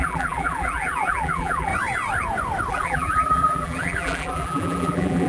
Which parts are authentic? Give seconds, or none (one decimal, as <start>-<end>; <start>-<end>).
1.7-2.7